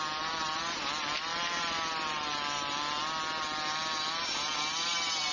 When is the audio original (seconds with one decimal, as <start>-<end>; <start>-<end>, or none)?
0.0-5.3